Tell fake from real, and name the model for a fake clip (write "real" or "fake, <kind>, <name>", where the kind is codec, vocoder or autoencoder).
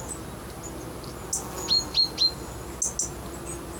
real